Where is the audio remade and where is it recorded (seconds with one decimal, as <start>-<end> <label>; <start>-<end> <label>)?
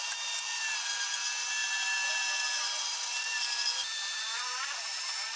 0.0-2.9 recorded; 2.9-4.8 remade; 4.8-5.4 recorded